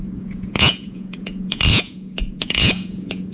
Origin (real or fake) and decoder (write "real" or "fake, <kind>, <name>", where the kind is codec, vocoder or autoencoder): fake, vocoder, Vocos